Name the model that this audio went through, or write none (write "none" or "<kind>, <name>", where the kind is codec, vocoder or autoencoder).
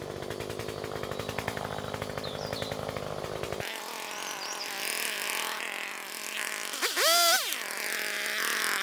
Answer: none